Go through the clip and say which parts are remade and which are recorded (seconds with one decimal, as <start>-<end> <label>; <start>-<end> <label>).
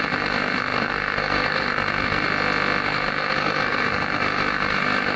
0.0-2.3 remade; 2.3-2.8 recorded; 2.8-5.2 remade